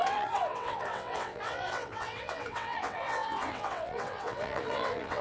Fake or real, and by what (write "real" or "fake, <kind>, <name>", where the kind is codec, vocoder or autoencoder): fake, vocoder, WaveNeXt